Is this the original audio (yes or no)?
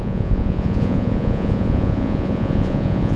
no